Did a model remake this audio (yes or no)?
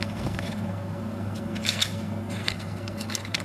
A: yes